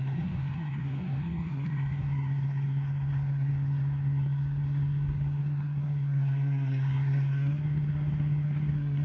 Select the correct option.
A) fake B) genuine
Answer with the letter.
A